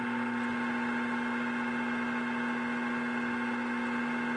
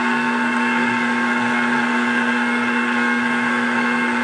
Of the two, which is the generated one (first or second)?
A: second